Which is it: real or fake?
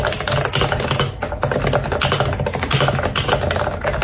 real